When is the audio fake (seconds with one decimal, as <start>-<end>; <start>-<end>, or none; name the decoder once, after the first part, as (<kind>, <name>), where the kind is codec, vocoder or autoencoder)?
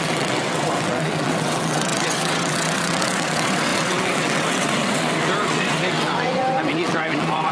0.0-7.5 (vocoder, WaveNeXt)